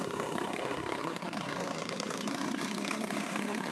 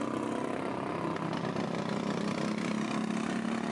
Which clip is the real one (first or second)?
second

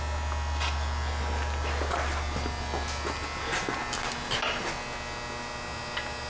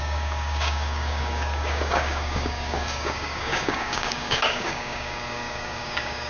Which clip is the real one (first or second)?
first